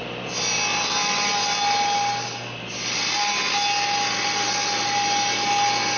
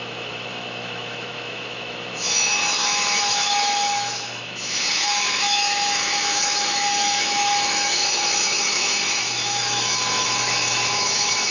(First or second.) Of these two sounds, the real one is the first